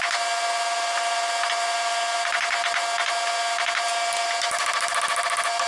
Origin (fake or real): real